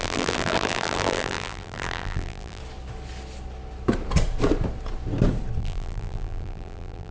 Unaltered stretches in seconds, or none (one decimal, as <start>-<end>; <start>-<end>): 2.6-5.6